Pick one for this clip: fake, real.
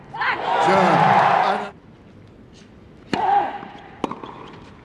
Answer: real